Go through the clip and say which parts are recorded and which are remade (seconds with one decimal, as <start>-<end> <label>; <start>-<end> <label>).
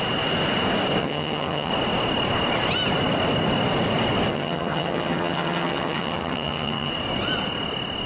0.0-1.0 recorded; 1.0-1.7 remade; 1.7-4.3 recorded; 4.3-6.9 remade; 6.9-8.1 recorded